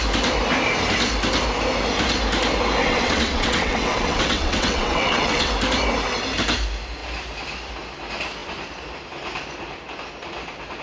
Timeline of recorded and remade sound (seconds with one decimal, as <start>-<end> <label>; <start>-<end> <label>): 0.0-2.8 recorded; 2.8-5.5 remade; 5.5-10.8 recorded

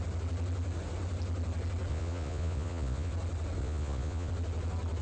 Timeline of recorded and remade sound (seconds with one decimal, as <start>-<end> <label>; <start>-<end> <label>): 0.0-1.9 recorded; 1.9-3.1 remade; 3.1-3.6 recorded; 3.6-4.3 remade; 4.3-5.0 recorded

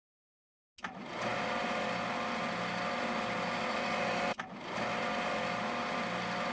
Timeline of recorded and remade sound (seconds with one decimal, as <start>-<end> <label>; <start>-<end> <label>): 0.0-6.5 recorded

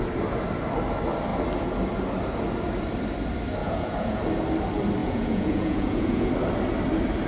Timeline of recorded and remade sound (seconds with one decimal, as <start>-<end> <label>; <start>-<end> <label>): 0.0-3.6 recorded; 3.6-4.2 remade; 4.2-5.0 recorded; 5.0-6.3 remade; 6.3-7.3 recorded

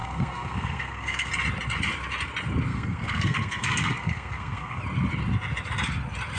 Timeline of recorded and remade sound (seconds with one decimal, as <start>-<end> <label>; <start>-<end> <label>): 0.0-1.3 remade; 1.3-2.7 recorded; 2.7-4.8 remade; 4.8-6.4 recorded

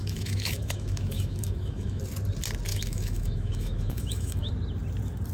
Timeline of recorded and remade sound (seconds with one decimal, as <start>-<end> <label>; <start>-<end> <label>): 0.0-2.0 remade; 2.0-2.7 recorded; 2.7-4.5 remade; 4.5-5.3 recorded

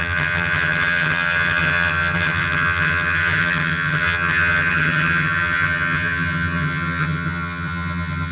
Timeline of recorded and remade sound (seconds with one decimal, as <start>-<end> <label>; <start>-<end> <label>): 0.0-8.3 remade

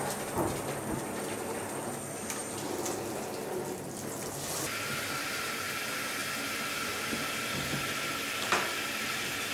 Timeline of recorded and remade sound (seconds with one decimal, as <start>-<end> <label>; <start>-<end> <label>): 0.0-9.5 recorded